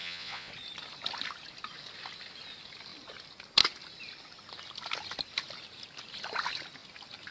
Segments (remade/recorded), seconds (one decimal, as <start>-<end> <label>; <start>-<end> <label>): 0.0-0.5 remade; 0.5-7.3 recorded